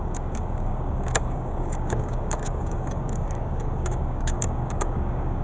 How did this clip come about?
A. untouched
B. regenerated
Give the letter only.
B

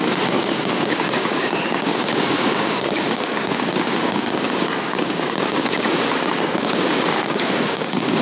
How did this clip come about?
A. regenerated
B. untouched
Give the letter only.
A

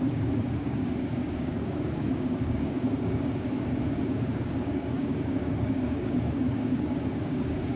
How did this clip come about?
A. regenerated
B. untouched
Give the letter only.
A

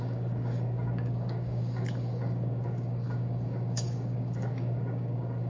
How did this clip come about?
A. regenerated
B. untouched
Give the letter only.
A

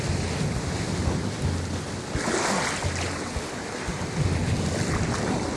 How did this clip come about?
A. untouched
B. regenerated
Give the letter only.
A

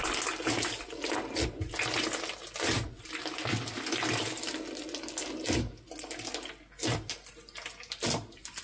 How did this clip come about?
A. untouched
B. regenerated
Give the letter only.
A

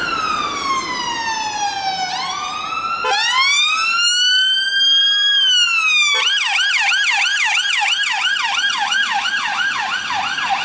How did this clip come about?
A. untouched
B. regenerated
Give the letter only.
A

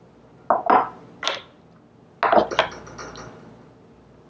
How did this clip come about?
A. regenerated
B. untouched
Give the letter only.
B